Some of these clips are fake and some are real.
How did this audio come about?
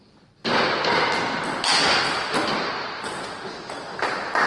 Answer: real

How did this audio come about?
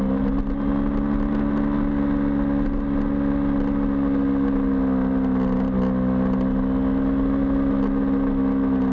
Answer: real